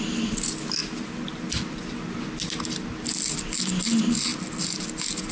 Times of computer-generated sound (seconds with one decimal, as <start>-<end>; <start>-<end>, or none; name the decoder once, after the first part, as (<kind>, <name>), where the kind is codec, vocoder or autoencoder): none